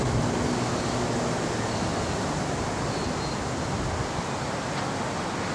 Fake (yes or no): no